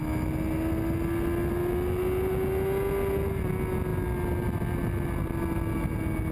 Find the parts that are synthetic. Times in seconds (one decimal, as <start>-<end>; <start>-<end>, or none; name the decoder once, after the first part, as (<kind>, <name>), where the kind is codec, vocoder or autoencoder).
none